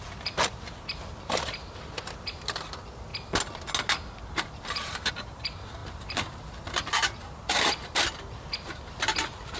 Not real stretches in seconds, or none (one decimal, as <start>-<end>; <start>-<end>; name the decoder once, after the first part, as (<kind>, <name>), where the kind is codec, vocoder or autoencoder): 0.0-3.1 (vocoder, BigVGAN v2); 4.4-9.6